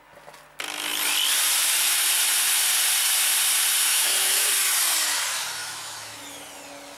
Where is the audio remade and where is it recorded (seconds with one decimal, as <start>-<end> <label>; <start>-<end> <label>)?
0.0-3.9 recorded; 3.9-4.5 remade; 4.5-5.6 recorded; 5.6-6.2 remade; 6.2-7.0 recorded